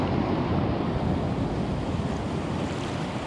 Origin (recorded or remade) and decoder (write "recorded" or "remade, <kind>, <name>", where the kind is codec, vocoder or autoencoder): recorded